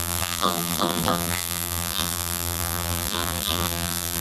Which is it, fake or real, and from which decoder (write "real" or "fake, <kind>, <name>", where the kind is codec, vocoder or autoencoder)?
fake, vocoder, BigVGAN v2